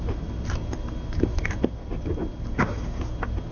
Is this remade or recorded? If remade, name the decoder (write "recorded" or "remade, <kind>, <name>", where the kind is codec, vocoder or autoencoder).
recorded